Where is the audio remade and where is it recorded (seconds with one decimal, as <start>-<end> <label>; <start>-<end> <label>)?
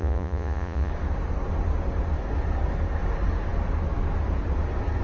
0.0-0.9 remade; 0.9-5.0 recorded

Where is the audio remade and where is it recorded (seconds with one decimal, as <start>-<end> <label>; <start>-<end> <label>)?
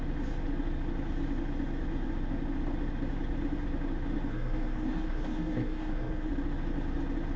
0.0-4.3 recorded; 4.3-6.3 remade; 6.3-7.4 recorded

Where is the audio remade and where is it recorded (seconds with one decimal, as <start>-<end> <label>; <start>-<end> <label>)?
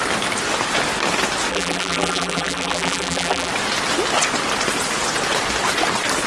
0.0-1.5 recorded; 1.5-3.5 remade; 3.5-6.3 recorded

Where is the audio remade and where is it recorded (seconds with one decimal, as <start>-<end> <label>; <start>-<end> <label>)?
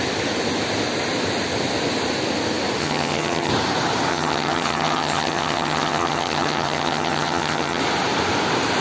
0.0-2.8 recorded; 2.8-3.5 remade; 3.5-4.1 recorded; 4.1-7.8 remade; 7.8-8.8 recorded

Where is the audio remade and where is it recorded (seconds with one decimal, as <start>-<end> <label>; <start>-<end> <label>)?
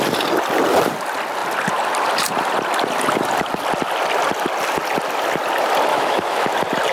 0.0-5.9 recorded; 5.9-6.5 remade; 6.5-6.9 recorded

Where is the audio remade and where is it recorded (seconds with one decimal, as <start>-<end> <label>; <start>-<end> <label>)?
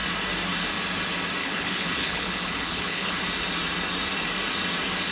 0.0-1.4 recorded; 1.4-3.2 remade; 3.2-5.1 recorded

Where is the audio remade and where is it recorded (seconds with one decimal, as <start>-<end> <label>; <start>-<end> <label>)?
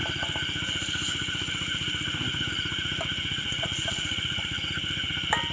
0.0-3.4 recorded; 3.4-4.6 remade; 4.6-5.5 recorded